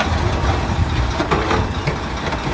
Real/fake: real